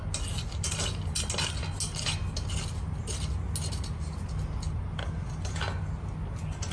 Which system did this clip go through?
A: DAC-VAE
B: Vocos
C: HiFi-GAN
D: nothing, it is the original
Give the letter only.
D